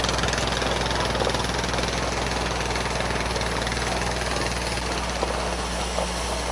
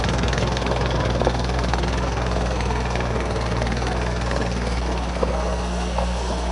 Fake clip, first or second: second